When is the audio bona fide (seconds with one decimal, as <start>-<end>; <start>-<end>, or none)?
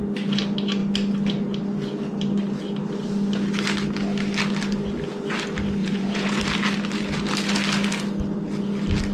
0.0-5.8; 6.4-9.1